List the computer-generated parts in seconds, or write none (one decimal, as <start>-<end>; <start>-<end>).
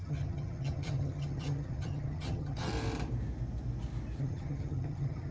0.0-2.7; 4.2-5.3